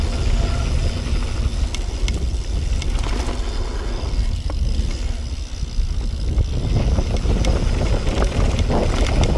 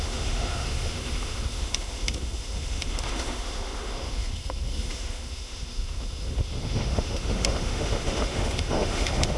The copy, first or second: second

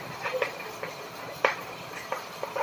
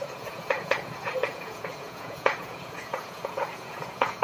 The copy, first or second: second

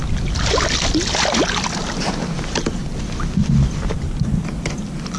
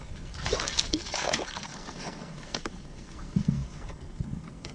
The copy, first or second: second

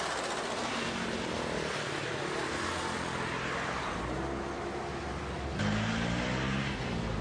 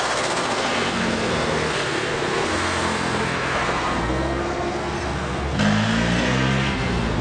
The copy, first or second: second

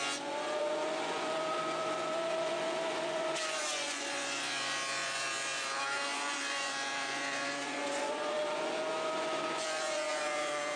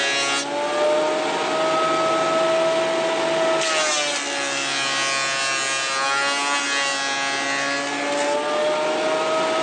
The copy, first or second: first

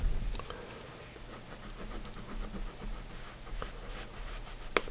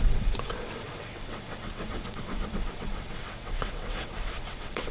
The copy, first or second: second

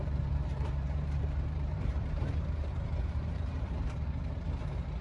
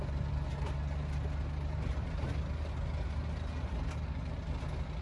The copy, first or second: first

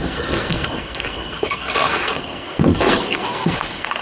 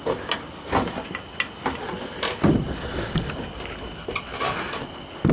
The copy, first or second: first